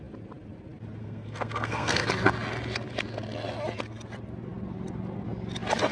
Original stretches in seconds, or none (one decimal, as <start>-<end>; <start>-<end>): 0.0-1.0; 2.1-5.9